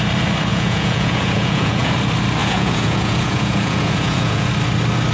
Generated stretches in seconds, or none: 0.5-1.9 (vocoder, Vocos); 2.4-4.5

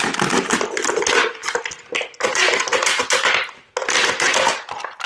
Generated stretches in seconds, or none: none

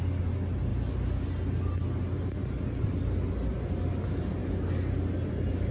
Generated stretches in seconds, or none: none

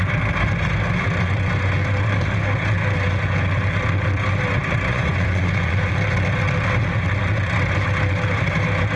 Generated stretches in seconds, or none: 4.9-5.9 (vocoder, Vocos)

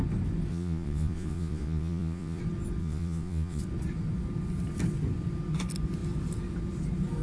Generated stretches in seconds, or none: 0.5-2.4 (vocoder, Vocos); 2.8-3.6

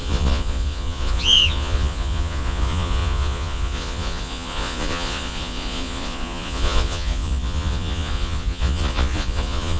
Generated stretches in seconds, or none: 0.0-9.8 (vocoder, Vocos)

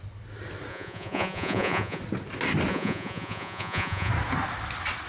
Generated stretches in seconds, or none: 0.7-2.0 (vocoder, Vocos); 2.7-4.1